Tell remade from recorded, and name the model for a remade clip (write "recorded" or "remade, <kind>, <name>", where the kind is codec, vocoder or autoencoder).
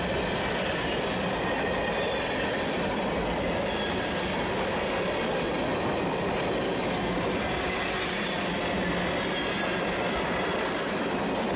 recorded